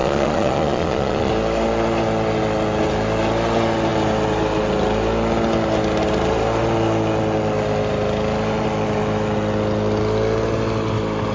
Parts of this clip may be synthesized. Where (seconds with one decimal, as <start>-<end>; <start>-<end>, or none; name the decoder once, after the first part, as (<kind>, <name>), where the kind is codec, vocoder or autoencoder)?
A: 0.0-1.3 (vocoder, Vocos)